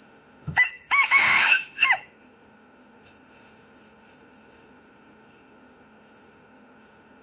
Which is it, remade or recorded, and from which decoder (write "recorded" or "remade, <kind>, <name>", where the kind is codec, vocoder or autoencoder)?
remade, autoencoder, DAC-VAE